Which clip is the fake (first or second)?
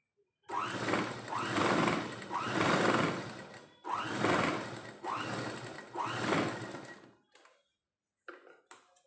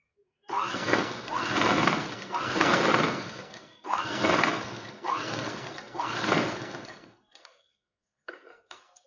second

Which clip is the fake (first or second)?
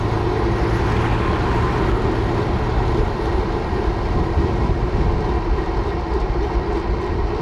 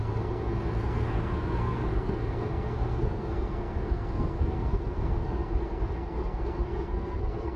second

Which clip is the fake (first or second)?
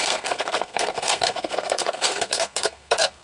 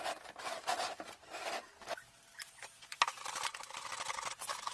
first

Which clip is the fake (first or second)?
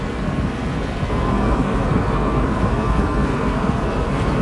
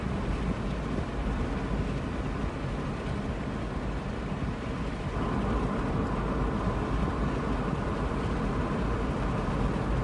first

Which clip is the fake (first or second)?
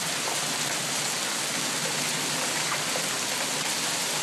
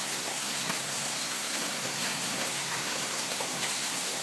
second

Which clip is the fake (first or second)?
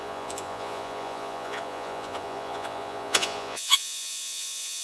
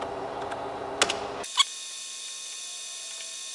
first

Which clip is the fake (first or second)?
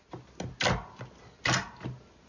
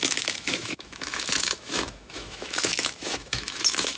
second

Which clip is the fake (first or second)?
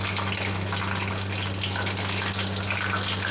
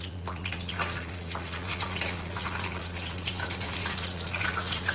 second